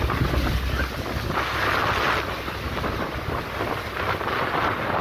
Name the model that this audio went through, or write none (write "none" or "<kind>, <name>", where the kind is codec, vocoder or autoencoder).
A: none